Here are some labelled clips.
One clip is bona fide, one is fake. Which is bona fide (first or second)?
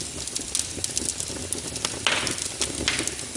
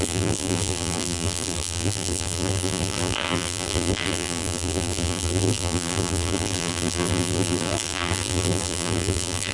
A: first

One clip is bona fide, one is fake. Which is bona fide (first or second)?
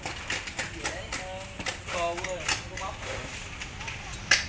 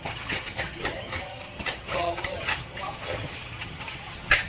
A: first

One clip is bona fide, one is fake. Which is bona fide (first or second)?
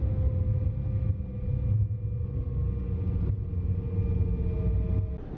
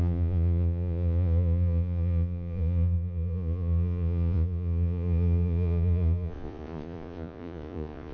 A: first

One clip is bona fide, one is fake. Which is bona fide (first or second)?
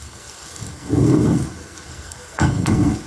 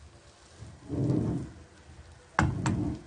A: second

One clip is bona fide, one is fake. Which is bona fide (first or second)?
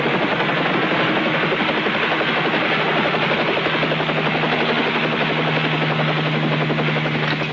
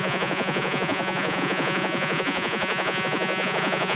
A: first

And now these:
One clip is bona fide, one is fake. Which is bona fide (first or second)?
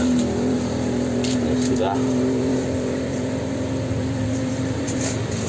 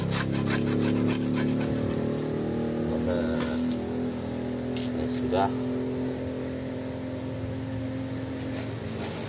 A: second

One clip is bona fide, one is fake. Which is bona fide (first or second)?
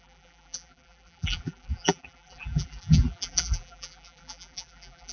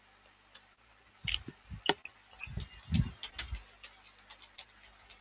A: second